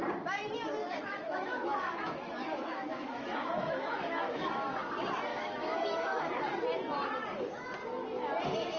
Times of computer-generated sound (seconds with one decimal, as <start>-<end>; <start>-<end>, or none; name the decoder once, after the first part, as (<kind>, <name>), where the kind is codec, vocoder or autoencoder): 0.8-4.5 (autoencoder, DAC-VAE); 5.3-6.2